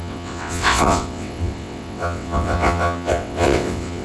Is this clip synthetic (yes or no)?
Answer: yes